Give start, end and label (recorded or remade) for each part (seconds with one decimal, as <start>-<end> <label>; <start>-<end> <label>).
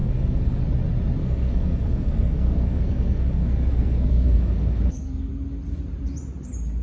0.0-0.6 remade; 0.6-1.2 recorded; 1.2-5.2 remade; 5.2-6.8 recorded